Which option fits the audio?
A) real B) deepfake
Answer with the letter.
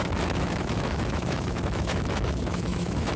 B